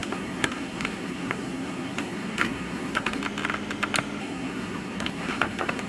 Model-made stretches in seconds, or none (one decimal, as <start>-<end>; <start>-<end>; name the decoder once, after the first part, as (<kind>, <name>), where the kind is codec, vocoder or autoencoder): 0.0-3.2 (codec, SNAC); 4.2-5.9